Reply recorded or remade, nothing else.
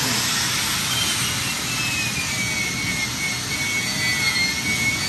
recorded